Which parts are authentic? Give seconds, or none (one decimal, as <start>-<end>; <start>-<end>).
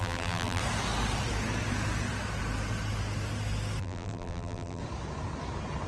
0.6-3.8; 4.8-5.9